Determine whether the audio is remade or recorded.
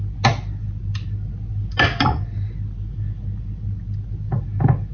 recorded